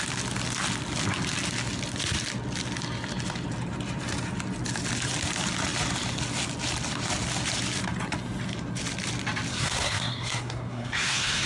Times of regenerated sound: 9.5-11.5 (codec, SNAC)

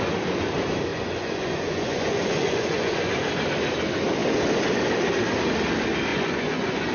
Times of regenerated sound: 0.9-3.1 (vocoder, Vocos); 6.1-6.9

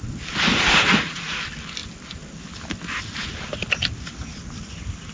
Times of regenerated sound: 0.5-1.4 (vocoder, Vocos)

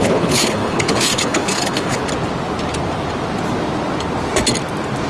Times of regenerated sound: 0.0-2.0 (codec, HILCodec)

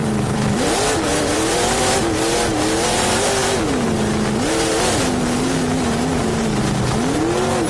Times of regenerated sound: 0.0-1.8 (vocoder, BigVGAN v2)